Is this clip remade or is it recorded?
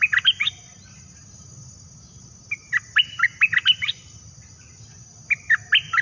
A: recorded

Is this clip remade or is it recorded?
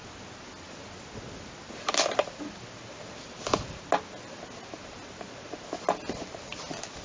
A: recorded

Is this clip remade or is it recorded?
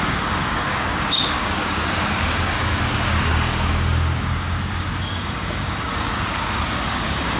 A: remade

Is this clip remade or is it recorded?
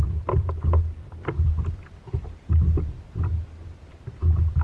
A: recorded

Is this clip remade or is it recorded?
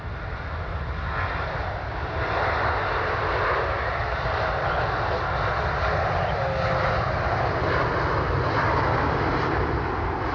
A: recorded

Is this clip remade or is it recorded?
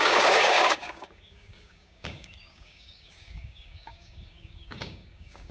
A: remade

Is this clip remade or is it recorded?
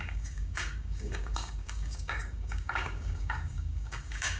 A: remade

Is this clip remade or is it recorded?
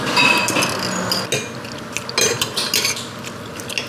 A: recorded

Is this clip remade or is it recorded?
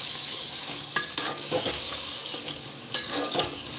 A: remade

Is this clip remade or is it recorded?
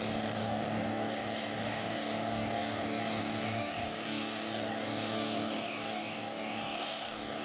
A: remade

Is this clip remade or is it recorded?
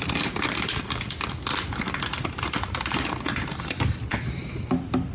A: recorded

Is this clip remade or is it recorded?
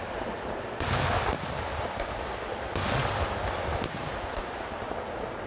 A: recorded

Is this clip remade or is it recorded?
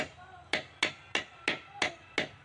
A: recorded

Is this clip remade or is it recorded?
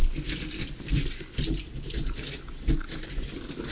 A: recorded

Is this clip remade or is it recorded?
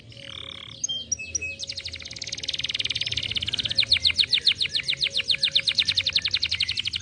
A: recorded